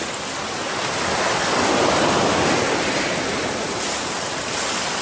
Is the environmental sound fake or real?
real